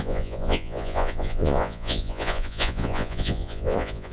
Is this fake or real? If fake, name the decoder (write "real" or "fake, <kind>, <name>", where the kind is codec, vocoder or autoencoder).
fake, vocoder, Vocos